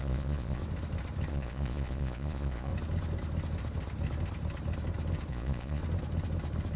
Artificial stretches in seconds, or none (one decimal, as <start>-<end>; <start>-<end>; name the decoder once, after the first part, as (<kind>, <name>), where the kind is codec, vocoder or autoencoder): 0.0-0.6 (vocoder, Vocos); 1.3-2.7; 5.3-5.8